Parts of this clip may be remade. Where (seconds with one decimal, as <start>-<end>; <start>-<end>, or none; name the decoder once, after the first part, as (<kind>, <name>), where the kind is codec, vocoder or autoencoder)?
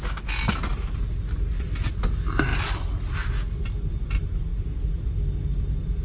2.5-3.3 (vocoder, BigVGAN v2)